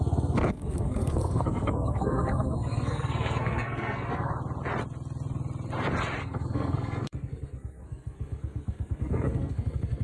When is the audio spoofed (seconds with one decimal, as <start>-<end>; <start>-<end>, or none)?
0.0-4.3; 6.2-10.0